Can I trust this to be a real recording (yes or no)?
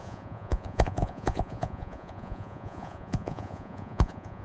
no